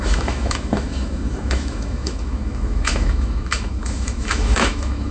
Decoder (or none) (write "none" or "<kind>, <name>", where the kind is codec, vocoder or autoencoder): autoencoder, DAC-VAE